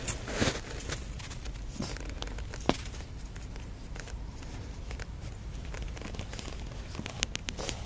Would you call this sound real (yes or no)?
yes